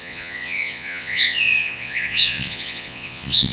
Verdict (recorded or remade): remade